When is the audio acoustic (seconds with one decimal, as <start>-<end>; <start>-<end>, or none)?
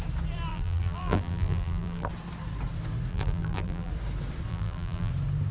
0.0-0.5; 2.1-3.1; 3.9-4.5; 5.1-5.5